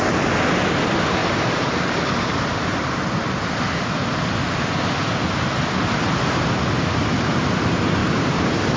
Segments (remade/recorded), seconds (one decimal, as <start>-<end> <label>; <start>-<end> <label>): 0.0-1.2 recorded; 1.2-2.0 remade; 2.0-8.0 recorded; 8.0-8.8 remade